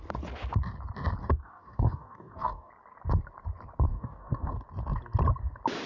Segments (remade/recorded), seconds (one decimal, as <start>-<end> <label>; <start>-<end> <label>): 0.0-1.2 recorded; 1.2-2.7 remade; 2.7-3.9 recorded; 3.9-4.5 remade; 4.5-5.9 recorded